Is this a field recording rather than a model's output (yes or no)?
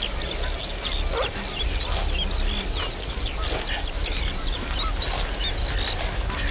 yes